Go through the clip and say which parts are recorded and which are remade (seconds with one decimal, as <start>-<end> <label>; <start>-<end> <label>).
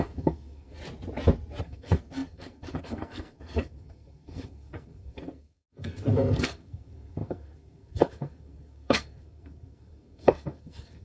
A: 0.0-0.8 remade; 0.8-1.6 recorded; 1.6-11.0 remade